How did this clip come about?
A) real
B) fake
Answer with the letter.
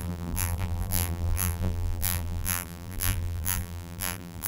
B